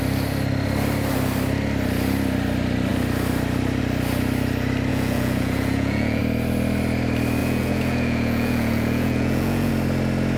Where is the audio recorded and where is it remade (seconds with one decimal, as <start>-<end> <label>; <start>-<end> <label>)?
0.0-4.9 recorded; 4.9-6.2 remade; 6.2-7.4 recorded; 7.4-9.7 remade; 9.7-10.4 recorded